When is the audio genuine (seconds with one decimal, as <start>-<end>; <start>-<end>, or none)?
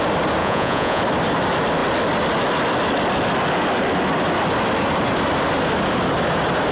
0.0-0.4; 1.0-6.7